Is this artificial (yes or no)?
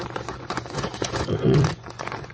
yes